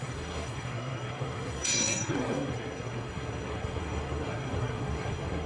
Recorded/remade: remade